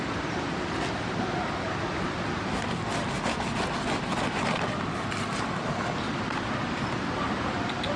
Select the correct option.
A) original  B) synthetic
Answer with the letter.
A